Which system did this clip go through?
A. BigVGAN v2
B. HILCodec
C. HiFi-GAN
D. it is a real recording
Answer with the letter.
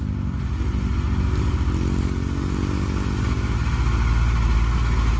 D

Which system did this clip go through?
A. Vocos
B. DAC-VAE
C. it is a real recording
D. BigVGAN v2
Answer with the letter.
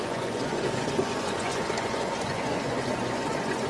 A